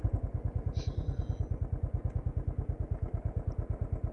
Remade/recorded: recorded